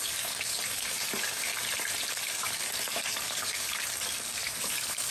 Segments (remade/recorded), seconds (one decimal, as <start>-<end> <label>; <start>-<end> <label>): 0.0-1.5 remade; 1.5-2.1 recorded; 2.1-5.1 remade